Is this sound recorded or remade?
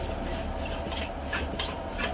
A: recorded